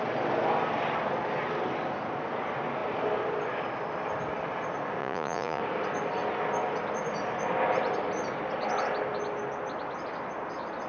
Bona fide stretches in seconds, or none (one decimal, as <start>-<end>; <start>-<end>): 0.0-5.0; 5.6-10.9